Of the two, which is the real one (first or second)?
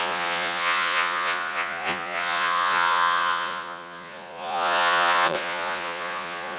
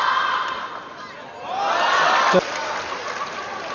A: second